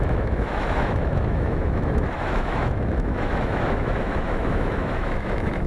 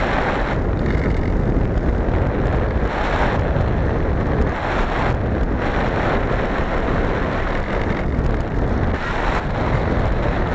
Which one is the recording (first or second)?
second